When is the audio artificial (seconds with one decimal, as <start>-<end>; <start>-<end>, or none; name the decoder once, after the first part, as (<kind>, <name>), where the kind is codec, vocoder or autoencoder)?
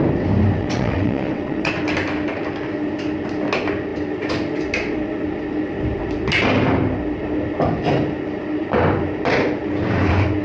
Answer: 0.6-1.7 (vocoder, WaveNeXt)